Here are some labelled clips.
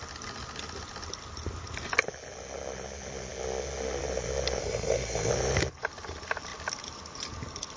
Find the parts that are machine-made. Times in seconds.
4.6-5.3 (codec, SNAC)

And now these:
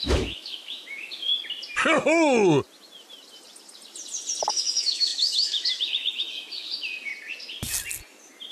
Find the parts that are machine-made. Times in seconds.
0.0-1.3 (autoencoder, DAC-VAE); 4.5-7.1

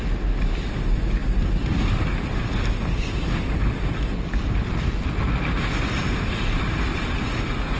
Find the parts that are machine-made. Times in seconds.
none